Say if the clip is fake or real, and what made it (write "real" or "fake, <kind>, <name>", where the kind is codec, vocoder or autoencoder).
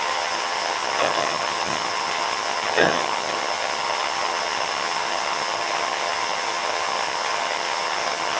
fake, vocoder, HiFi-GAN